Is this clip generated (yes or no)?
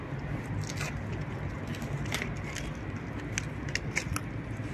no